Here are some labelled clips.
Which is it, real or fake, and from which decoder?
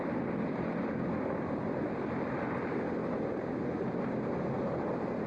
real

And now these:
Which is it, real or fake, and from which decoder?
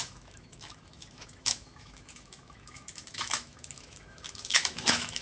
fake, autoencoder, DAC-VAE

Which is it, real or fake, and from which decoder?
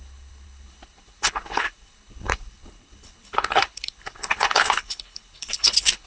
fake, codec, HILCodec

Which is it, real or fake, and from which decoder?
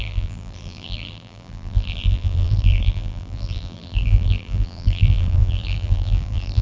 fake, vocoder, BigVGAN v2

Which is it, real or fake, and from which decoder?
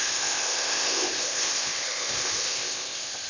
fake, codec, ZipCodec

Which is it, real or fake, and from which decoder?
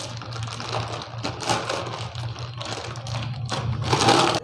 real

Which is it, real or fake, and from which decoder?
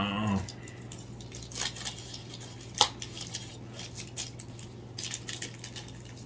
real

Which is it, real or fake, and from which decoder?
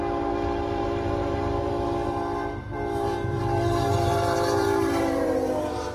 fake, vocoder, BigVGAN v2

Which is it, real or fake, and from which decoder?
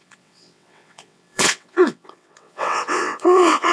fake, vocoder, WaveNeXt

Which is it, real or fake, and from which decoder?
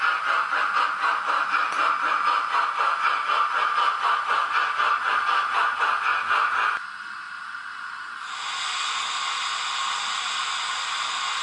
real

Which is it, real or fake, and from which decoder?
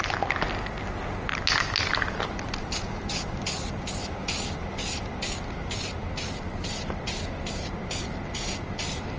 real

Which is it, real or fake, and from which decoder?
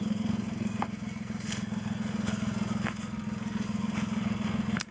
fake, codec, SNAC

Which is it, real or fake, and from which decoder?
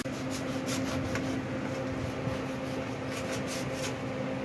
real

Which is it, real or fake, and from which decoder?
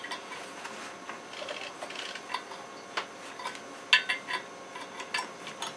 real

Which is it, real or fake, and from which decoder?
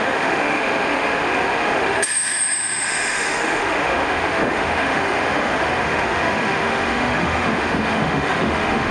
fake, autoencoder, DAC-VAE